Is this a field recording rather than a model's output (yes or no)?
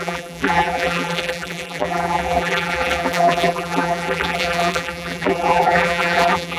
no